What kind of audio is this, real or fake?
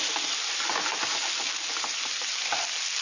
real